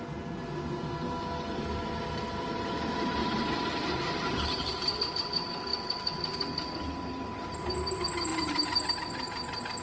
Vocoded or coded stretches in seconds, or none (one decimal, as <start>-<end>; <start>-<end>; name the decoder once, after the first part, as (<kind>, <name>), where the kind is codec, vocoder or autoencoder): 3.2-5.1 (vocoder, BigVGAN v2); 8.3-8.9